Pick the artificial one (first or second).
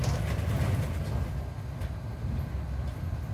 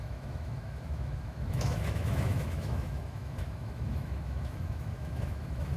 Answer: second